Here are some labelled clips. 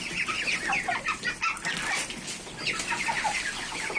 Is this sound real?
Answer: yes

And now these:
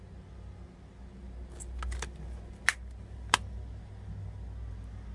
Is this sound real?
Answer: yes